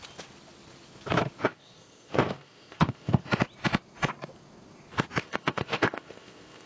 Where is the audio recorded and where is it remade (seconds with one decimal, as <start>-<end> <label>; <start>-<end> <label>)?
0.0-1.4 recorded; 1.4-3.2 remade; 3.2-5.2 recorded; 5.2-6.7 remade

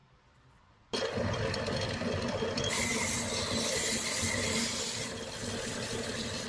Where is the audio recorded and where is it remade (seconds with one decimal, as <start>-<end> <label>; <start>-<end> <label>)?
0.0-6.5 recorded

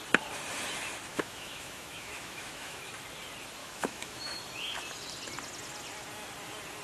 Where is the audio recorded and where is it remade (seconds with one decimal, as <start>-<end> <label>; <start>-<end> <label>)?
0.0-1.1 recorded; 1.1-2.8 remade; 2.8-3.6 recorded; 3.6-4.4 remade; 4.4-6.8 recorded